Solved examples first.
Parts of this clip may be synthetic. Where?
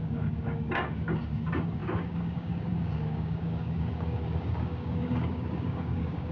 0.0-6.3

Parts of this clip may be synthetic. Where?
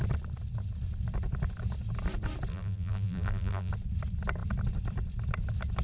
2.5-3.7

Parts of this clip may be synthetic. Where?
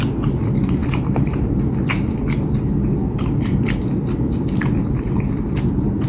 0.8-1.6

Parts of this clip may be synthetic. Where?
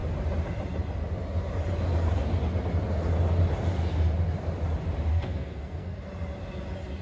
5.1-6.0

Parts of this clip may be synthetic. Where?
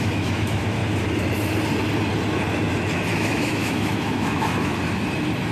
0.0-0.8; 3.1-4.7